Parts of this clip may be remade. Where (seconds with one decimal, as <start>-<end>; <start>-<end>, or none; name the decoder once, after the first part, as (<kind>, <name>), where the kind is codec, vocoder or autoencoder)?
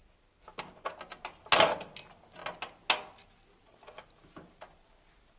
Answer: none